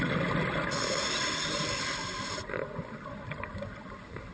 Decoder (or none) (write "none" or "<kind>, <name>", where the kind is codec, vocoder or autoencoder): none